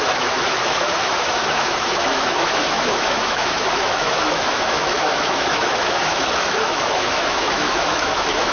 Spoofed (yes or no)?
yes